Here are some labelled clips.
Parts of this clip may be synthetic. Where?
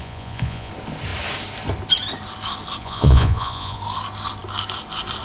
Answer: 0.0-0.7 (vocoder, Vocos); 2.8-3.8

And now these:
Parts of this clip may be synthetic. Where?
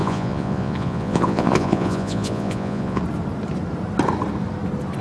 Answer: 0.0-3.0 (vocoder, Vocos)